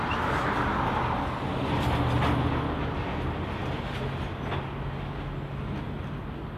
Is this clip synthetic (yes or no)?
no